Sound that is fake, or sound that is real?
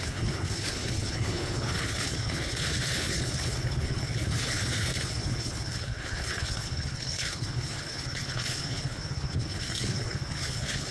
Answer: fake